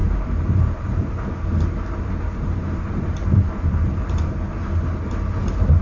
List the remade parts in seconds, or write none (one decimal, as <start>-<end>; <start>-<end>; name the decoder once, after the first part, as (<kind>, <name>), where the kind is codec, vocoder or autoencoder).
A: 0.0-1.1 (vocoder, BigVGAN v2); 2.3-4.2